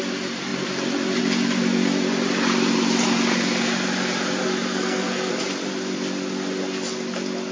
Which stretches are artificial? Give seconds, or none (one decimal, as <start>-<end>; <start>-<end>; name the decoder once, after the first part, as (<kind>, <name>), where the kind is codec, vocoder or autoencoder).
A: 4.7-5.3 (codec, SNAC)

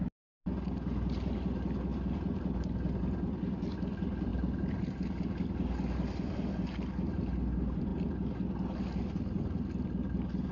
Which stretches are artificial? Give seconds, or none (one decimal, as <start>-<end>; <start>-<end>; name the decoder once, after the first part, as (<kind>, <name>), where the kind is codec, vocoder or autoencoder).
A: none

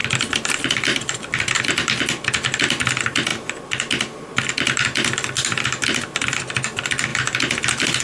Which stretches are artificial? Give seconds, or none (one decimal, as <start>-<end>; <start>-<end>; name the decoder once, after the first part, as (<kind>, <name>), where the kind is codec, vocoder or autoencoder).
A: none

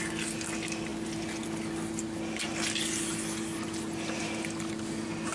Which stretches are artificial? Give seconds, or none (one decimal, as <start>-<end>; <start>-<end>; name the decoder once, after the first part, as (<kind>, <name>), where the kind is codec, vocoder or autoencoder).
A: none

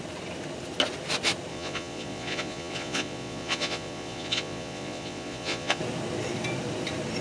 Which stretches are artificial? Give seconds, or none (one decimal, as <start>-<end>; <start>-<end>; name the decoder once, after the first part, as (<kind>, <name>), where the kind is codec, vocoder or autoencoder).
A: 1.5-5.8 (vocoder, Vocos)

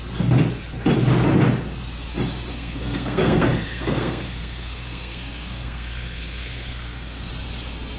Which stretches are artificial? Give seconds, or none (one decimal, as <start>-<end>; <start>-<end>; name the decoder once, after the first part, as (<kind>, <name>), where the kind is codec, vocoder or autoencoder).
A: 2.5-7.3 (codec, SNAC)